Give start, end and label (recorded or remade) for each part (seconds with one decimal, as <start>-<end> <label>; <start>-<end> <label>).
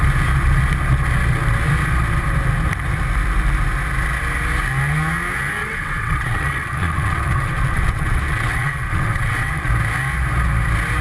0.0-5.6 recorded; 5.6-9.7 remade; 9.7-11.0 recorded